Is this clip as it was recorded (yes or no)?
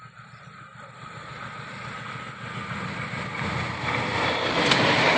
yes